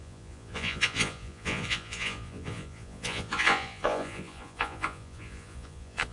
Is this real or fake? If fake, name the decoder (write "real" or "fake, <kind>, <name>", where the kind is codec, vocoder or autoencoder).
fake, vocoder, Vocos